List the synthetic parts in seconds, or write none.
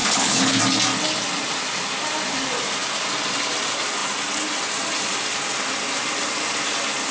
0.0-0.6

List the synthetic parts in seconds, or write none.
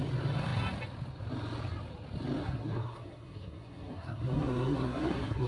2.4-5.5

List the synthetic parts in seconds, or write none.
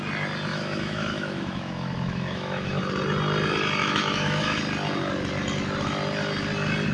0.5-2.8; 3.8-4.6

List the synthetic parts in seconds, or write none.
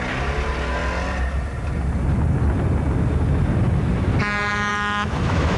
4.7-5.6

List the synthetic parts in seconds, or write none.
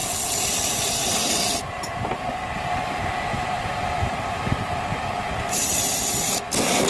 3.3-4.4